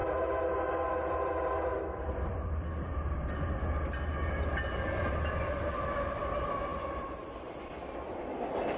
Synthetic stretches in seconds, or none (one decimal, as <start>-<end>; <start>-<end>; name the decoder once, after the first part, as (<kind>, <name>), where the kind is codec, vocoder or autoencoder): 1.7-4.3 (vocoder, BigVGAN v2); 6.7-7.4